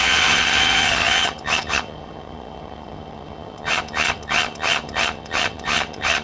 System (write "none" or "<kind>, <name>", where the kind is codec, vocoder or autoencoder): vocoder, HiFi-GAN